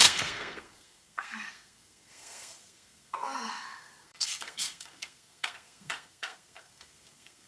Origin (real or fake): fake